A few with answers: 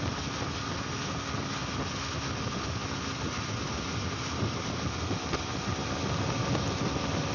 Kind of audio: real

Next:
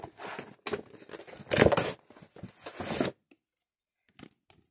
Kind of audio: real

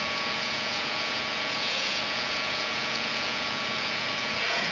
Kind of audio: fake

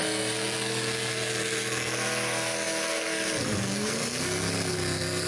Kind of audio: fake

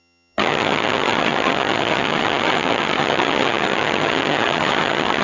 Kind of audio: fake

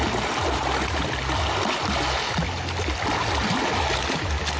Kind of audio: real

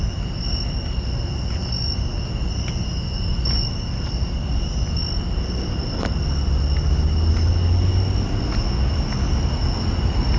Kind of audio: real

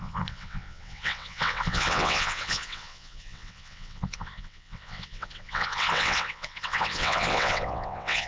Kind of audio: fake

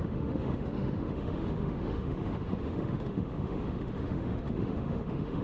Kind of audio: fake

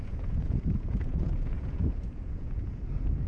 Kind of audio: fake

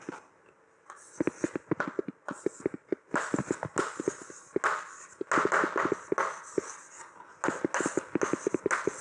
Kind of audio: real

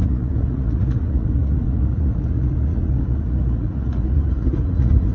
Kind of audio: fake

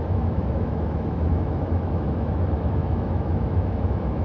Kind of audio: fake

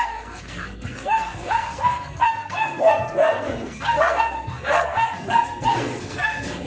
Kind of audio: fake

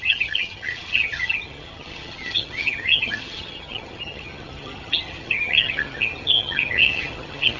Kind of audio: fake